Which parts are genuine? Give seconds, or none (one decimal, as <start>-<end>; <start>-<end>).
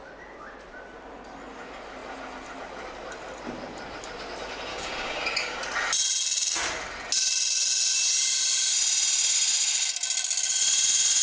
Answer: 0.0-4.7; 5.6-11.2